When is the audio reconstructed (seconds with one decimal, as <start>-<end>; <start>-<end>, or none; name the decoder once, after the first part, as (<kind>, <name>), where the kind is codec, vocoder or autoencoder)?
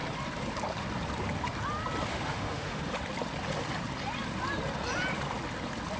2.1-2.8 (autoencoder, DAC-VAE)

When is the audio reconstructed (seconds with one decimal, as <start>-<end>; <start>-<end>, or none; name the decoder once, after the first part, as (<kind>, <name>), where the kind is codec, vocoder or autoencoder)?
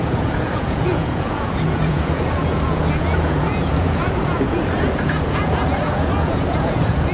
0.0-7.1 (vocoder, Vocos)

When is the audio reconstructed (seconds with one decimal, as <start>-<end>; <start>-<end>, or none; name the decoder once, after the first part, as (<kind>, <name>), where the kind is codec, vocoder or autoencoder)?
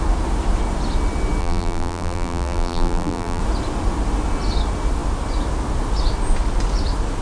1.4-3.4 (vocoder, BigVGAN v2)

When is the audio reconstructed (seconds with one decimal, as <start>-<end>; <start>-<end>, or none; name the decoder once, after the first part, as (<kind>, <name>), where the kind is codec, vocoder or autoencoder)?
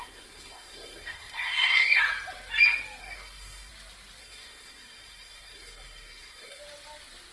0.0-2.0 (codec, SNAC); 3.0-3.7; 4.2-6.6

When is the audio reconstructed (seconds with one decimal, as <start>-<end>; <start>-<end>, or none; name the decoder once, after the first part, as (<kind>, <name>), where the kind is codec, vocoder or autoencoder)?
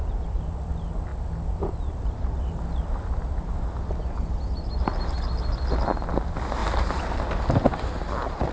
6.6-7.2 (vocoder, BigVGAN v2)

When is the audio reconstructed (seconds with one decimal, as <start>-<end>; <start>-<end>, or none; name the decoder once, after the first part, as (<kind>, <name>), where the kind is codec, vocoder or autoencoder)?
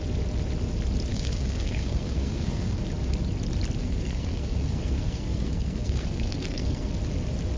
1.1-2.8 (codec, SNAC); 3.8-6.9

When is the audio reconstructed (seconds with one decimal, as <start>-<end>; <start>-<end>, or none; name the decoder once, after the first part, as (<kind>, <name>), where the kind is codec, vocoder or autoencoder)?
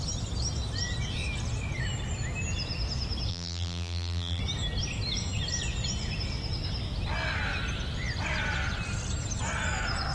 3.3-4.4 (vocoder, BigVGAN v2)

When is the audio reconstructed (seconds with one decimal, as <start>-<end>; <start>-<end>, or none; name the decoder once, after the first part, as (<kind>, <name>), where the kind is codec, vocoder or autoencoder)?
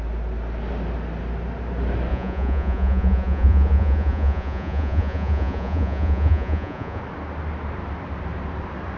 2.1-7.0 (vocoder, Vocos)